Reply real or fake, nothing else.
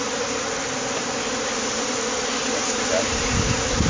real